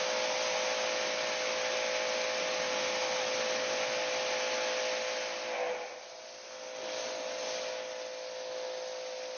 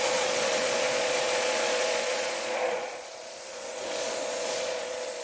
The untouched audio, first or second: first